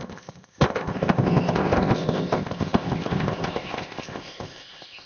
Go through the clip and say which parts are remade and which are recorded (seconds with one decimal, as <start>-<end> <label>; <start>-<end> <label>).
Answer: 0.0-5.1 remade